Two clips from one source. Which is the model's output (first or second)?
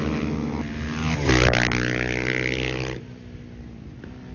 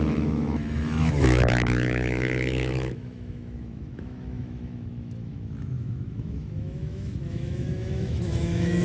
second